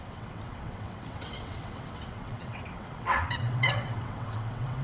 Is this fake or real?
fake